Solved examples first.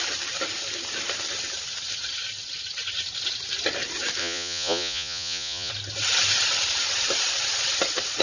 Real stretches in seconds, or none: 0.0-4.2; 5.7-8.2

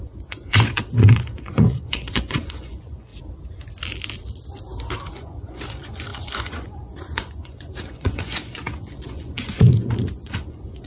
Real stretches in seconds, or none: 3.1-5.1

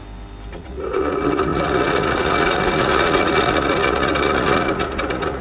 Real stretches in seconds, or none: 0.0-0.5

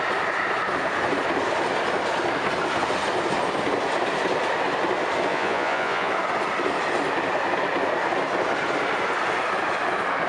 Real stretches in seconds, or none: 0.0-5.3; 6.1-10.3

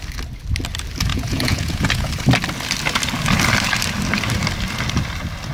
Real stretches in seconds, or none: 0.0-1.1; 2.1-5.5

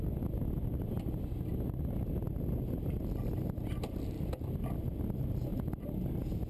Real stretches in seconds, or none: 0.0-6.5

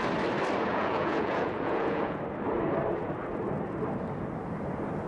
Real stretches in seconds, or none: 0.0-0.7; 2.2-5.1